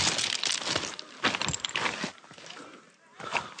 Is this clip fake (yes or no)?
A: no